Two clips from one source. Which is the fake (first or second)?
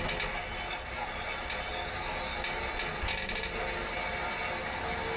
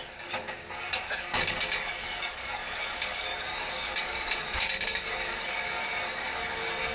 second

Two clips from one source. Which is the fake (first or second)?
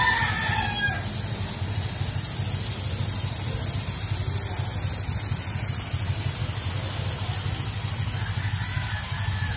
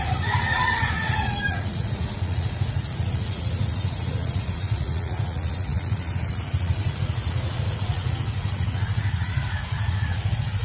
second